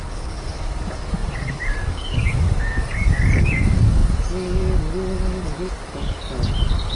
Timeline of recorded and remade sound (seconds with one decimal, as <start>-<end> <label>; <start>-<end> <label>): 0.0-7.0 remade